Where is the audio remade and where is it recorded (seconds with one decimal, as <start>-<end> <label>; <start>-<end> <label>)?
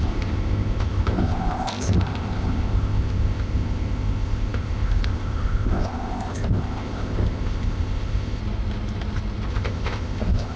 0.0-8.4 remade; 8.4-9.5 recorded; 9.5-10.6 remade